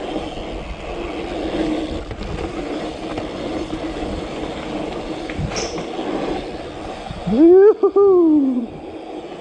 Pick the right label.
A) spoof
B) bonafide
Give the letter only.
B